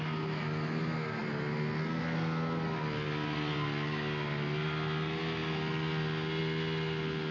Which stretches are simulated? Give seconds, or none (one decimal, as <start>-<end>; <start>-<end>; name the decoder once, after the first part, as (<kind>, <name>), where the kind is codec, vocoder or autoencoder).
none